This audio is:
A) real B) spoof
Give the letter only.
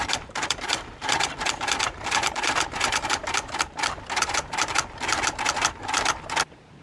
B